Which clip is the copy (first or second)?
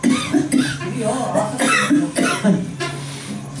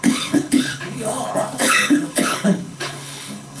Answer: second